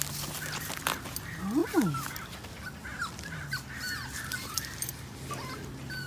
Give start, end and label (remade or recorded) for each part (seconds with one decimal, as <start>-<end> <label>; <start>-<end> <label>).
0.0-6.1 recorded